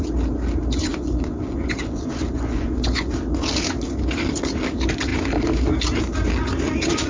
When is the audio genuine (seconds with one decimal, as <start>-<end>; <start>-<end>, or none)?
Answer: 0.0-0.9; 3.1-7.1